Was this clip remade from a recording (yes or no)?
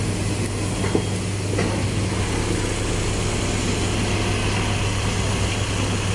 no